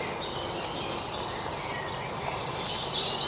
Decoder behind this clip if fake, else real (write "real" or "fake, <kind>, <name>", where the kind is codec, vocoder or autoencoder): real